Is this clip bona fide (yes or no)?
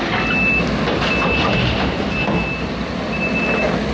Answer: yes